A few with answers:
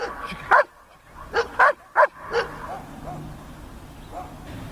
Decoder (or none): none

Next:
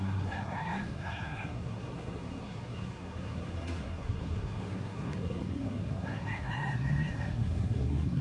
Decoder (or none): codec, SNAC